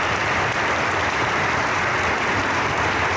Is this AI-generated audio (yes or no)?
no